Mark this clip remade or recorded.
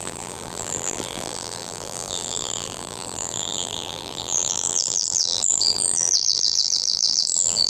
remade